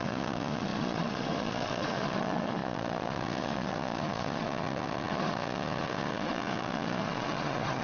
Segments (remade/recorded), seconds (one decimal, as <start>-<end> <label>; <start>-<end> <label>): 0.0-7.8 remade